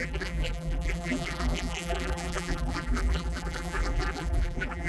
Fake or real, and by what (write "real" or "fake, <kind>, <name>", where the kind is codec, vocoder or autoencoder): fake, vocoder, BigVGAN v2